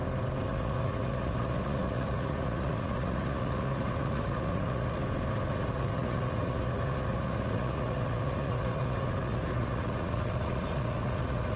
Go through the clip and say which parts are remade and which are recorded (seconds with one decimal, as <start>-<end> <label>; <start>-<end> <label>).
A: 0.0-0.5 recorded; 0.5-5.0 remade; 5.0-5.5 recorded; 5.5-11.6 remade